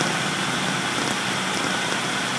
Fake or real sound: real